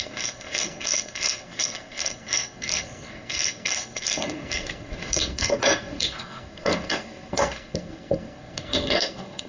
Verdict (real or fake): fake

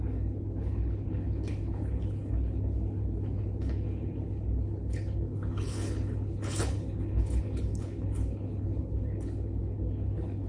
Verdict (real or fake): fake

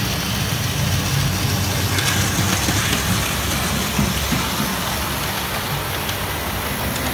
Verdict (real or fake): real